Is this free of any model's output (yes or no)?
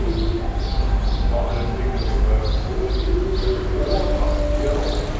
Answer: yes